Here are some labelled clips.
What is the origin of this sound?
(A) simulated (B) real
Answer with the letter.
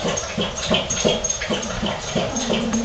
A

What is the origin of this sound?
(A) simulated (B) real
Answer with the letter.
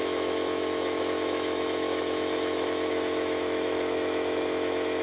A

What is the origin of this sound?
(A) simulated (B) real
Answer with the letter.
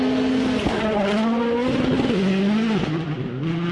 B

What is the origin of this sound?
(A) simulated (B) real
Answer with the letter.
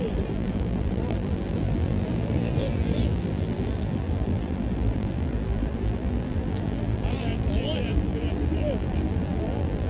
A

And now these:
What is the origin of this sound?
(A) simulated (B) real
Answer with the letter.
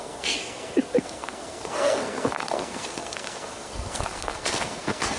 A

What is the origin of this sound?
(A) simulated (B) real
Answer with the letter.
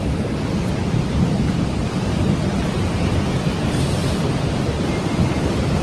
A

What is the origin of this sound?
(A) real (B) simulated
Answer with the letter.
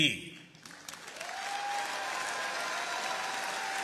A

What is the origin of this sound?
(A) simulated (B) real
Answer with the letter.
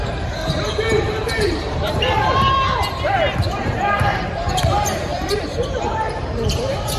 A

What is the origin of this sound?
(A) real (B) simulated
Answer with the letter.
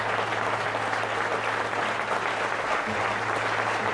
A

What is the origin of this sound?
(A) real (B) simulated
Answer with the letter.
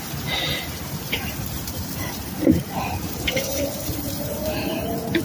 B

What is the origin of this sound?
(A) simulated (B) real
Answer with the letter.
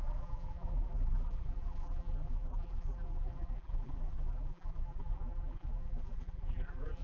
A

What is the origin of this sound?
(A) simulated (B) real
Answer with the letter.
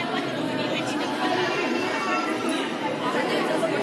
B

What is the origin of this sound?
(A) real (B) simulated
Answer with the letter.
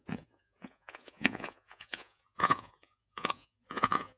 B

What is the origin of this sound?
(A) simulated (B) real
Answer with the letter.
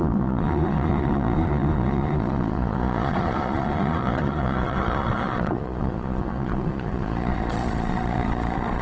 A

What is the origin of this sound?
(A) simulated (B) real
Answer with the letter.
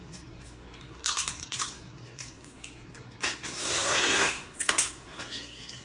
A